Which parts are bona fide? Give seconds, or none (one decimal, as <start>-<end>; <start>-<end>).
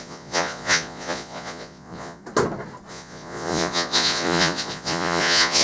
2.2-2.9